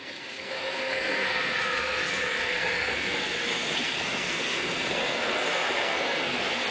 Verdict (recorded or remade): remade